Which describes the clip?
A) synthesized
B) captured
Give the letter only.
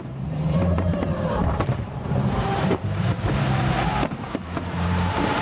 A